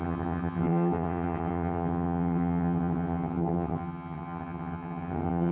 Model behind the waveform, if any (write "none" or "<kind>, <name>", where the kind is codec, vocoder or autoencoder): vocoder, HiFi-GAN